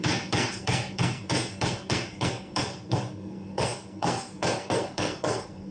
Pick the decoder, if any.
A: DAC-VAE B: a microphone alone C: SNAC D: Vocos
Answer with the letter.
C